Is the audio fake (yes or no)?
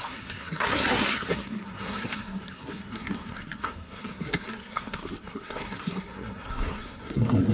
yes